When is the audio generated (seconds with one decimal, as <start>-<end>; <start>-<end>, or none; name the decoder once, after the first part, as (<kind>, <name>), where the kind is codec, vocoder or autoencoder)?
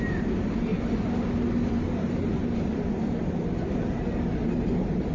0.0-0.7 (vocoder, BigVGAN v2); 1.7-2.7; 3.8-5.1